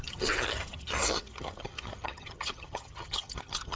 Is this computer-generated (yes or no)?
yes